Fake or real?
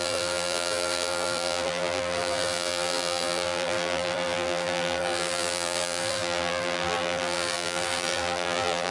fake